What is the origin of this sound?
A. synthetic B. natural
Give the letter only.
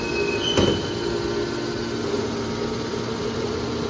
B